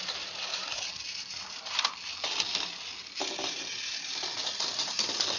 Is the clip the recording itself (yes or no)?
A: yes